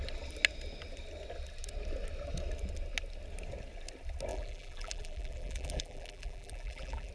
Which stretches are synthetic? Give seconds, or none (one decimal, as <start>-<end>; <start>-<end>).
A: 4.3-7.1